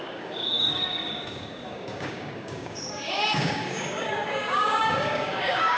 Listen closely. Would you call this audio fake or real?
fake